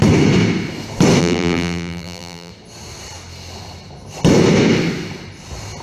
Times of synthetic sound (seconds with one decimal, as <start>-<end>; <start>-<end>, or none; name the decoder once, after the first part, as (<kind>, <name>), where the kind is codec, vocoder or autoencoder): 1.2-2.5 (vocoder, BigVGAN v2)